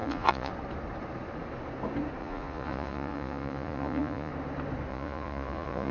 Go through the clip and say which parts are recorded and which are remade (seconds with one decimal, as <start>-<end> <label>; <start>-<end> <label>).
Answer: 0.0-0.5 remade; 0.5-2.2 recorded; 2.2-4.3 remade; 4.3-4.9 recorded; 4.9-5.9 remade